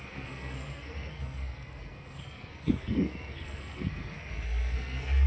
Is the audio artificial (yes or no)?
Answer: yes